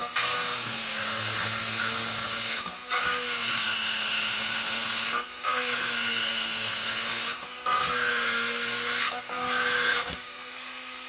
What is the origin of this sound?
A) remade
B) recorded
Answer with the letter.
A